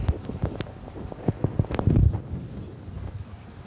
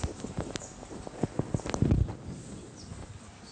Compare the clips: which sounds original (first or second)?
second